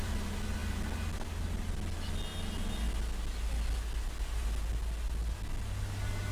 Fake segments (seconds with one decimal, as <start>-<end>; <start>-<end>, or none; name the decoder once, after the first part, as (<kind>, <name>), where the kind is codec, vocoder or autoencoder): none